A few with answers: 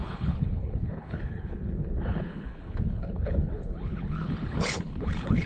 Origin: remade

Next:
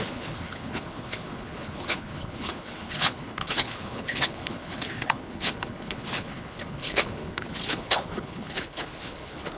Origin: remade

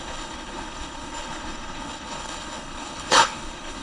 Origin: remade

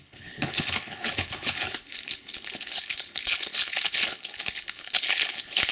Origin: remade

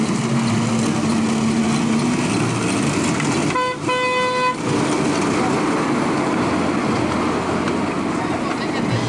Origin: recorded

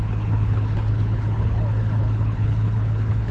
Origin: remade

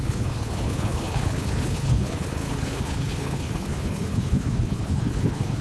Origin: remade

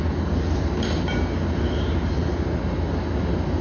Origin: recorded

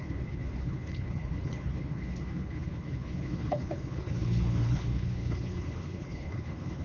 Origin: remade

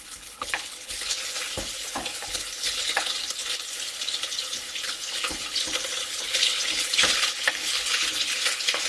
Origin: remade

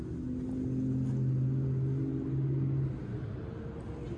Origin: recorded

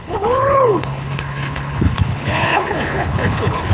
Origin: remade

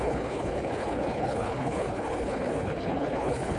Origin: remade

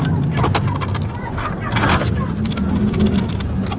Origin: recorded